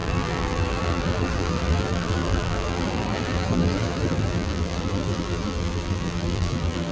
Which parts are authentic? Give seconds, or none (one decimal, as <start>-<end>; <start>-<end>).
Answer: none